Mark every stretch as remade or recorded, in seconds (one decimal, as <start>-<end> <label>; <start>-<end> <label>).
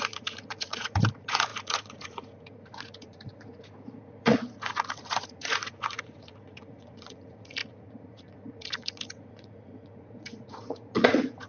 0.0-11.5 remade